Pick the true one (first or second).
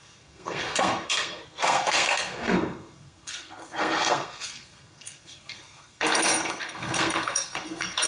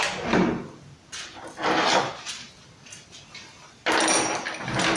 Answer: second